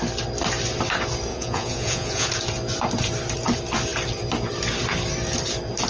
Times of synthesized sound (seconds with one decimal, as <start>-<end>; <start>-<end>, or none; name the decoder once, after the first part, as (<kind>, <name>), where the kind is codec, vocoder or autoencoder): 1.3-2.3 (vocoder, Vocos)